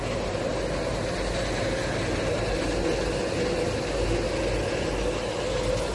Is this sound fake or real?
real